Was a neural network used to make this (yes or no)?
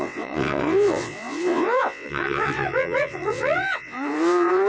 yes